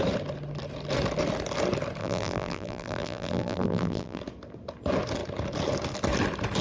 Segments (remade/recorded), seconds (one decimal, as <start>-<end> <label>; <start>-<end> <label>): 0.0-2.0 recorded; 2.0-4.2 remade; 4.2-6.6 recorded